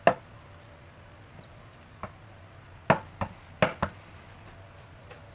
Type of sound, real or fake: real